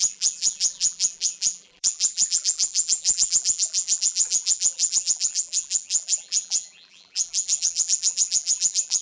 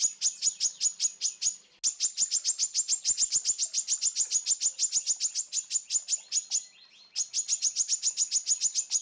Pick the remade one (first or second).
first